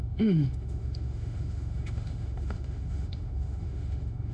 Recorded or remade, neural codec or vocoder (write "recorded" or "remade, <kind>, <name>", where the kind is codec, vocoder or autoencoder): remade, autoencoder, DAC-VAE